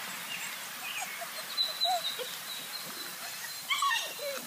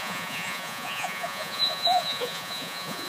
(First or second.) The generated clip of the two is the second